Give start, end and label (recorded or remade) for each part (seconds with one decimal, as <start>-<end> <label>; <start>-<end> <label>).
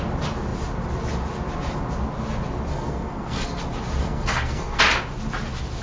0.0-2.7 recorded; 2.7-3.6 remade; 3.6-4.0 recorded; 4.0-4.8 remade; 4.8-5.8 recorded